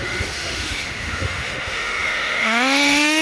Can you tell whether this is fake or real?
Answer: fake